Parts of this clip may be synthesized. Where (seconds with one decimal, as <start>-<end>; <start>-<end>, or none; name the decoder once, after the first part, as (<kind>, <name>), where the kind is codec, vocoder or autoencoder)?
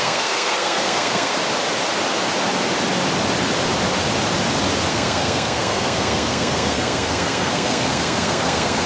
0.0-1.3 (codec, SNAC); 4.9-8.9